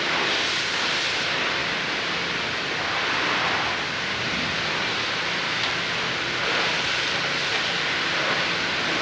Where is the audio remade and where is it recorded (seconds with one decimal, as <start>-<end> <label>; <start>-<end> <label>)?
0.0-9.0 recorded